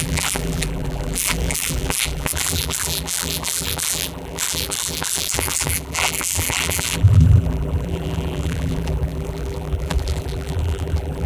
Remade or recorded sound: remade